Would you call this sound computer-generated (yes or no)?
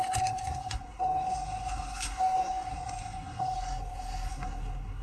yes